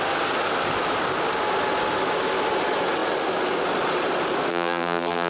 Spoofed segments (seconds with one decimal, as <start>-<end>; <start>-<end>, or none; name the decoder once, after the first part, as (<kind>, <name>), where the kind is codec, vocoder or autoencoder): 4.5-5.3 (vocoder, BigVGAN v2)